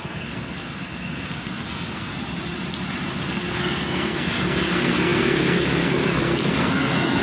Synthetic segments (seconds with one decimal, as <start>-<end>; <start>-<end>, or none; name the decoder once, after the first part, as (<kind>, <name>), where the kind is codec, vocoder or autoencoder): 0.0-2.1 (codec, SNAC); 3.1-7.2